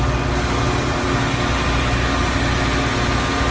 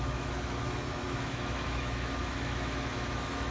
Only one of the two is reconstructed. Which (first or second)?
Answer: second